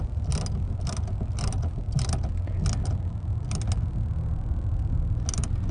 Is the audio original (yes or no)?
yes